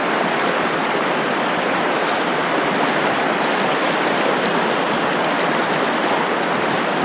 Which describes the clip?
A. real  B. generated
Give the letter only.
A